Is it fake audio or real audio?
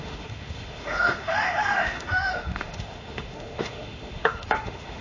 fake